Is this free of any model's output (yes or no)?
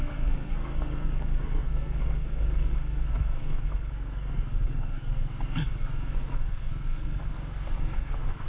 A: no